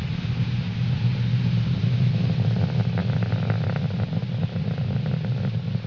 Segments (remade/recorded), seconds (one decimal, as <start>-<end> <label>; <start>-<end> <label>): 0.0-5.9 recorded